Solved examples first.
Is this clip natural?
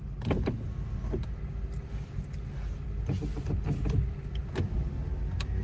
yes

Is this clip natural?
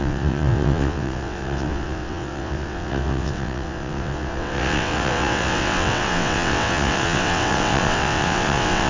no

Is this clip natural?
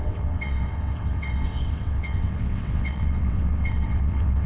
no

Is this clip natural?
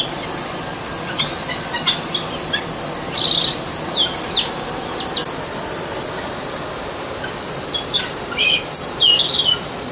yes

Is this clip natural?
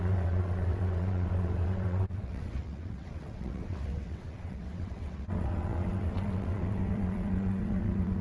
no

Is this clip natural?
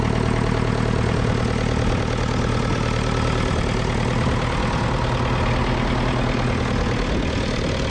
yes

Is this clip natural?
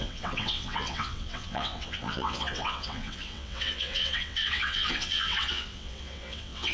no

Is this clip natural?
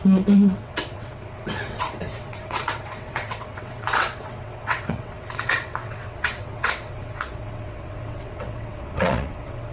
no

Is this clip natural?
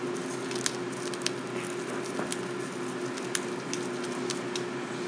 yes